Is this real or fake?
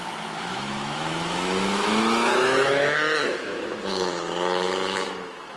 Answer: fake